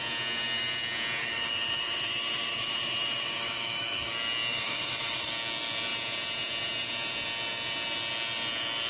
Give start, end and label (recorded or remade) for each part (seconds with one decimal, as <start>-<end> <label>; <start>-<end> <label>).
0.0-1.2 recorded; 1.2-4.1 remade; 4.1-4.5 recorded; 4.5-5.3 remade; 5.3-8.9 recorded